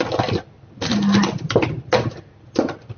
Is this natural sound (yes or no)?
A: yes